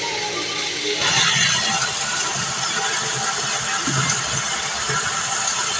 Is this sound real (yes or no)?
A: yes